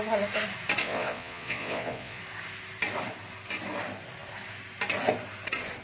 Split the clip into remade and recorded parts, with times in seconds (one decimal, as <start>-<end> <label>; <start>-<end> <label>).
0.0-0.8 recorded; 0.8-2.2 remade; 2.2-5.8 recorded